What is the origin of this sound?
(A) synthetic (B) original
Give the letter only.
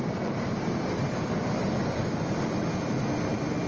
B